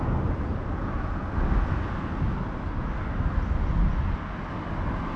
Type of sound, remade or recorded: recorded